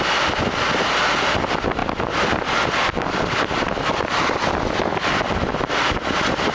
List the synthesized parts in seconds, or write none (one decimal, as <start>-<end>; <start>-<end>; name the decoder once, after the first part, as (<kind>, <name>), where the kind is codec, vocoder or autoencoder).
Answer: none